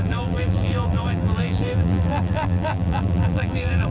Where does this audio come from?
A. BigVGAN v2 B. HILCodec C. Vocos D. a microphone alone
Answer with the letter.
A